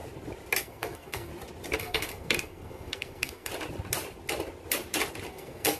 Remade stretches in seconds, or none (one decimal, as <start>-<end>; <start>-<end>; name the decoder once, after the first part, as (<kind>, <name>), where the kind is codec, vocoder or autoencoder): 0.6-1.3 (codec, SNAC); 1.8-3.5; 5.3-5.8